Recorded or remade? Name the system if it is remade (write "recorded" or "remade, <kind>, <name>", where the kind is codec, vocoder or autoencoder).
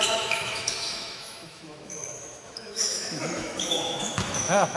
remade, autoencoder, DAC-VAE